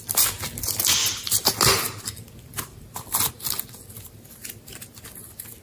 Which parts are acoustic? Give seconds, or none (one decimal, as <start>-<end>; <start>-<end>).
0.0-5.6